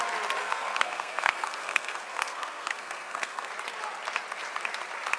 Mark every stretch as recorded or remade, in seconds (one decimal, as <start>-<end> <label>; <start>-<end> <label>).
0.0-0.4 recorded; 0.4-3.5 remade; 3.5-5.2 recorded